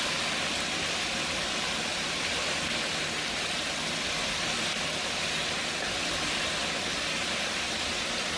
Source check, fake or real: real